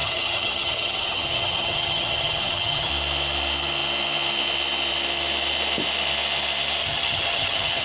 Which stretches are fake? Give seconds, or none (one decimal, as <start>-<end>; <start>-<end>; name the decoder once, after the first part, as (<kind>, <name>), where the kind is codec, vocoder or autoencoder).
0.0-2.9 (vocoder, HiFi-GAN); 6.8-7.8